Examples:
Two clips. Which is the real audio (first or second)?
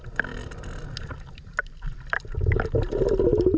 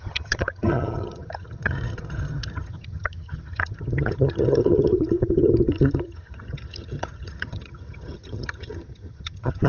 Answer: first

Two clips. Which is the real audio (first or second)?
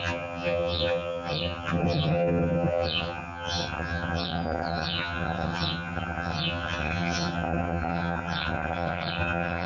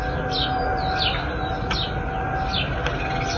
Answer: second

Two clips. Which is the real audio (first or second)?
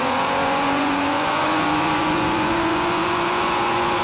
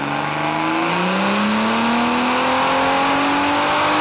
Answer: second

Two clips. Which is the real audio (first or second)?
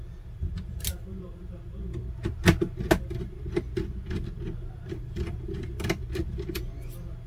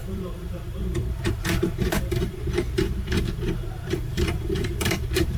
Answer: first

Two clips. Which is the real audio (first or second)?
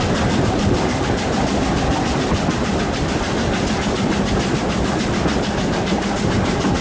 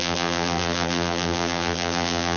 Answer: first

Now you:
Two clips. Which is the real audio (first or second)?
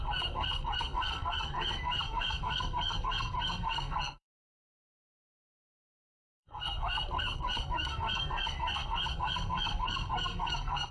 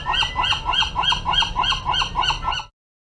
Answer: second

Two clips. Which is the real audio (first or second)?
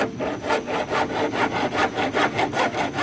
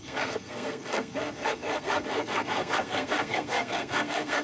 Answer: first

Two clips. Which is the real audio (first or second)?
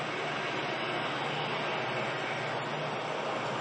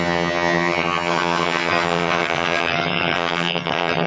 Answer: first